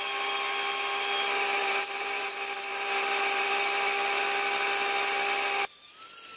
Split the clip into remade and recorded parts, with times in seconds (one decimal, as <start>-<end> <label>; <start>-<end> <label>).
0.0-1.6 recorded; 1.6-3.5 remade; 3.5-6.4 recorded